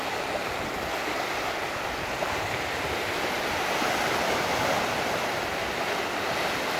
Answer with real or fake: real